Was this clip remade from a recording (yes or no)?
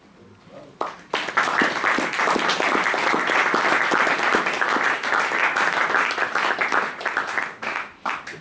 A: no